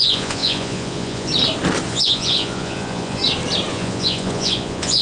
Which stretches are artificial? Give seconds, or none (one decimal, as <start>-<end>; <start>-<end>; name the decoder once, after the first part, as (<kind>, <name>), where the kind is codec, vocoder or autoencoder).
0.0-1.3 (vocoder, Vocos); 1.9-3.2; 3.7-5.0